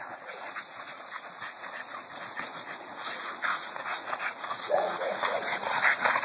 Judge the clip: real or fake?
fake